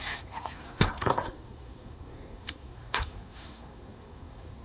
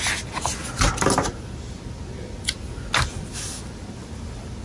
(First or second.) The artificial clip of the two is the first